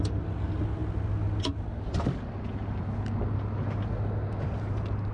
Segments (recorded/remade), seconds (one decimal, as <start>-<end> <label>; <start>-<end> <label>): 0.0-5.1 recorded